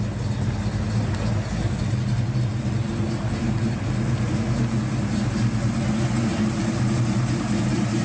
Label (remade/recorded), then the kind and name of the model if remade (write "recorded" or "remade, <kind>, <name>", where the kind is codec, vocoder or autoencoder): recorded